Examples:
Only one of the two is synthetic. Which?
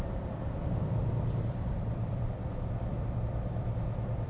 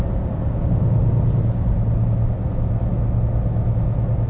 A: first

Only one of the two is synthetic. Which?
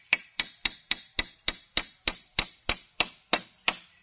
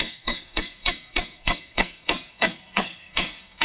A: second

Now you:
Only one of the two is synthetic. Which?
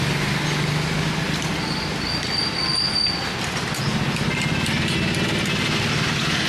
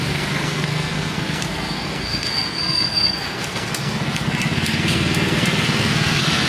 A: second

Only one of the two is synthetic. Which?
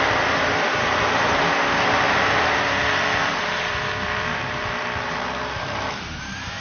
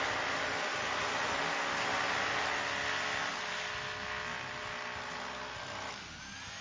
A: first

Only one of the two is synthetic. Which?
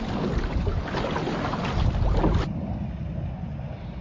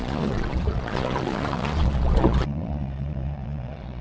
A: second